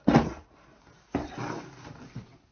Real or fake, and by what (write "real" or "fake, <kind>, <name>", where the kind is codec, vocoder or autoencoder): real